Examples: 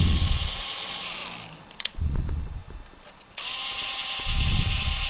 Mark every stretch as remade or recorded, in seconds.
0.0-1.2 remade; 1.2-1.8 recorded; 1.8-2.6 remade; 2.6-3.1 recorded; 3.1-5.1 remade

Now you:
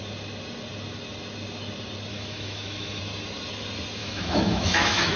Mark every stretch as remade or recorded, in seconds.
0.0-2.1 recorded; 2.1-3.0 remade; 3.0-4.0 recorded; 4.0-5.2 remade

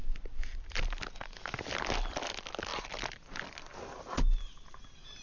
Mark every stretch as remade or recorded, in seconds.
0.0-5.2 recorded